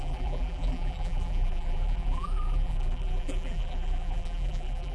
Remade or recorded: remade